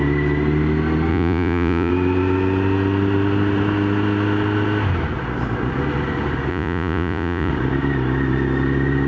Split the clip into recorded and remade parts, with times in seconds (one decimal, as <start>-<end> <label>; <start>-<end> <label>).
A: 0.0-1.1 recorded; 1.1-1.9 remade; 1.9-6.5 recorded; 6.5-7.5 remade; 7.5-9.1 recorded